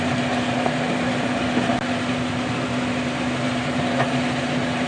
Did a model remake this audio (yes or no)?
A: no